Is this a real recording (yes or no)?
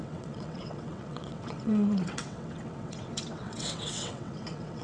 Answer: no